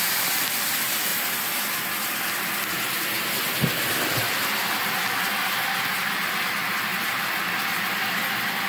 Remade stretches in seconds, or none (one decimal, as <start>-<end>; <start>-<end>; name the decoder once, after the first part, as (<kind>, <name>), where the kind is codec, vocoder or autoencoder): 6.9-7.4 (vocoder, BigVGAN v2)